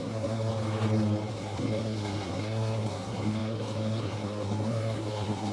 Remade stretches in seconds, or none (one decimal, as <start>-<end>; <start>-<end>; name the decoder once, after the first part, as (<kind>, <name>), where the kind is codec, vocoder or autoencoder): 0.0-0.5 (codec, SNAC); 1.3-5.5